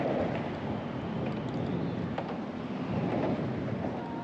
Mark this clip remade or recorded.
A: recorded